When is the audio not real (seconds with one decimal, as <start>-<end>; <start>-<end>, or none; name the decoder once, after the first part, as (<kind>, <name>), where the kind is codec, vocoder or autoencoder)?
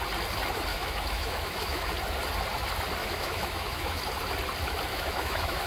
0.7-1.9 (autoencoder, DAC-VAE); 3.0-4.0; 4.9-5.7